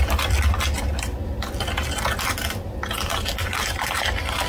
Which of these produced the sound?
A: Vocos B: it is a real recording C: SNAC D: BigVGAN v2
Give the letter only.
B